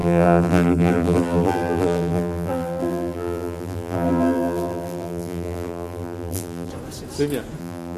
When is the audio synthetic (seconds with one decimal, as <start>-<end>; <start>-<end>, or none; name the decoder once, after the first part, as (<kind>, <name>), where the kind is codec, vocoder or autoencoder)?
0.0-6.7 (vocoder, BigVGAN v2); 7.6-8.0